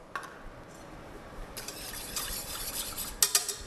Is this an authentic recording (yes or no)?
yes